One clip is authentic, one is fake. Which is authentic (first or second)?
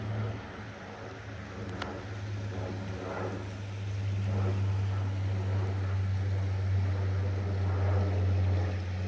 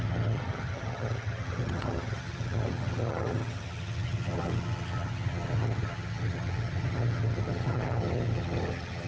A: first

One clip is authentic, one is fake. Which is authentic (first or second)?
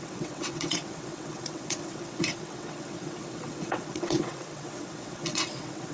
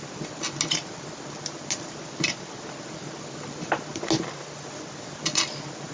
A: second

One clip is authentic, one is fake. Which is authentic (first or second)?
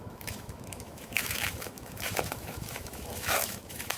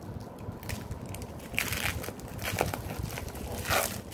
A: second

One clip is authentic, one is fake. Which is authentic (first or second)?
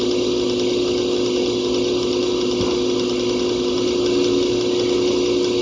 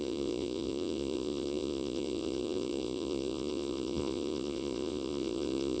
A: first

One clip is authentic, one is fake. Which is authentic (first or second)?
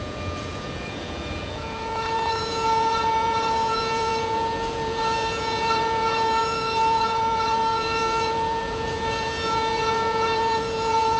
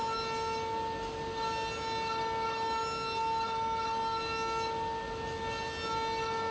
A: second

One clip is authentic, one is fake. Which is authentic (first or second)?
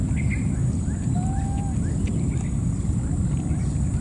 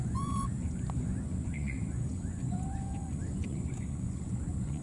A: first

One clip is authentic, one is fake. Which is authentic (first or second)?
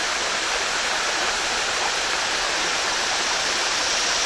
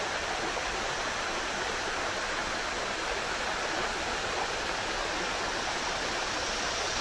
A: second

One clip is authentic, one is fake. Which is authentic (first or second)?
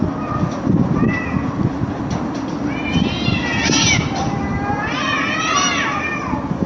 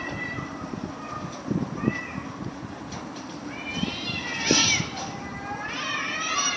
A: first